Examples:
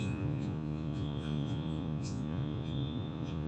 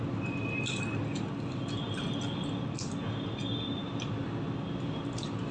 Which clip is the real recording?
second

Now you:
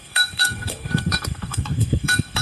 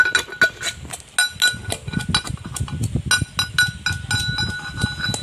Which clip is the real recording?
second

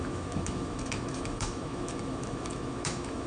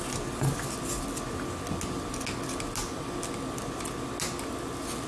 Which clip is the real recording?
second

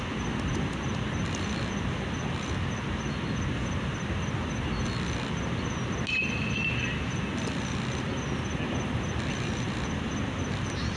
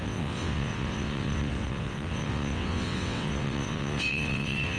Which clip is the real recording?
first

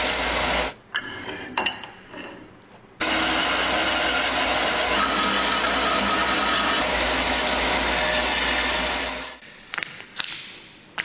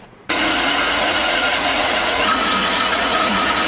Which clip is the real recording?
first